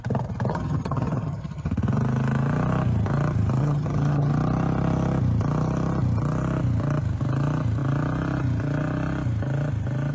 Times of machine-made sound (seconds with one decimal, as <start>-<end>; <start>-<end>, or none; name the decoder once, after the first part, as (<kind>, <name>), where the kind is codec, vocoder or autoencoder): 0.5-1.7 (vocoder, HiFi-GAN); 3.6-4.3